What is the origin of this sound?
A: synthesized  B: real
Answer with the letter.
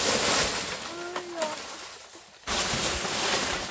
B